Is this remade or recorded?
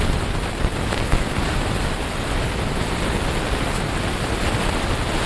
recorded